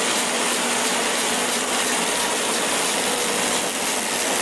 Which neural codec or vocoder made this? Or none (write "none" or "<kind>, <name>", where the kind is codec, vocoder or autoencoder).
none